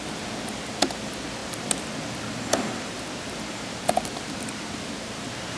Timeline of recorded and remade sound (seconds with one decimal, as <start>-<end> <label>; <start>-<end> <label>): 0.0-5.6 recorded